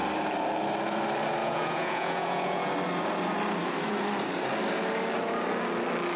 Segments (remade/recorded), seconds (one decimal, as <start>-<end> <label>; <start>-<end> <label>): 0.0-1.4 recorded; 1.4-2.7 remade; 2.7-6.2 recorded